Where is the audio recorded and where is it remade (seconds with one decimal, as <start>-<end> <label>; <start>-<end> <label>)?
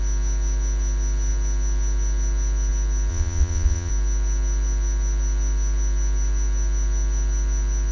0.0-3.1 recorded; 3.1-3.9 remade; 3.9-7.9 recorded